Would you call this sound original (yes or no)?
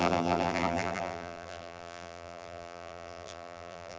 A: no